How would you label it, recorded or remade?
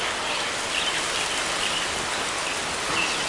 recorded